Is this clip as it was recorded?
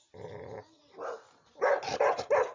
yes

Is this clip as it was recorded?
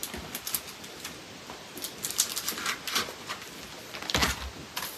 yes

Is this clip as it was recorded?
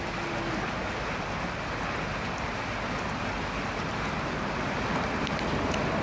yes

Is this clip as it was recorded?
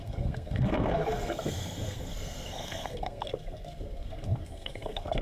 no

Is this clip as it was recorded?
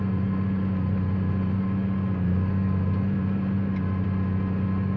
yes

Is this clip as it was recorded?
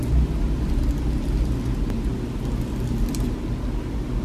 yes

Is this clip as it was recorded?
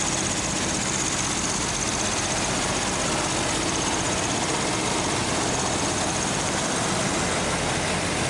yes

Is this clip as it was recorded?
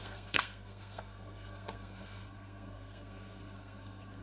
no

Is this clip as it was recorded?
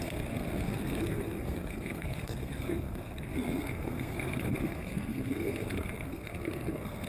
no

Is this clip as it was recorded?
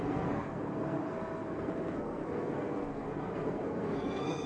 no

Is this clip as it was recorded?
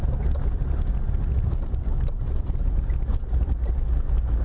yes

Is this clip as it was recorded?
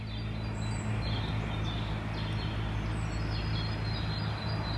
yes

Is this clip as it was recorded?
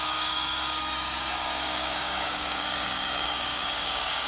no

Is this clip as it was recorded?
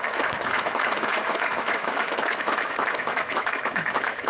no